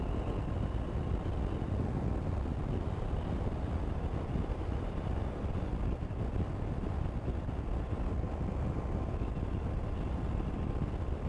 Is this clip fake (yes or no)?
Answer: no